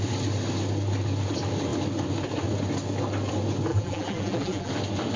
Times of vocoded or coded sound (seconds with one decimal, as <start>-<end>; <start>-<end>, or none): 3.7-4.7